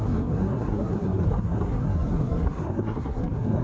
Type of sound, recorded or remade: remade